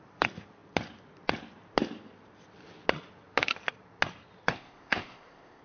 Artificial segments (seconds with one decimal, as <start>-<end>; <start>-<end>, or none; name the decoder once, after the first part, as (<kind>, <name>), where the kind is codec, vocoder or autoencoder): 4.5-5.6 (codec, ZipCodec)